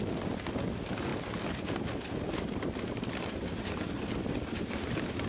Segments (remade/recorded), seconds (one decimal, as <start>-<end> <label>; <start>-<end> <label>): 0.0-5.3 recorded